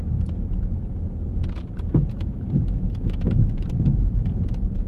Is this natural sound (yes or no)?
yes